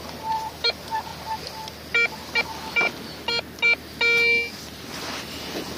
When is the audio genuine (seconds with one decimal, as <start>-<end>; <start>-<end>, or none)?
0.0-5.8